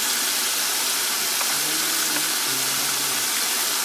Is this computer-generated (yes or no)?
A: no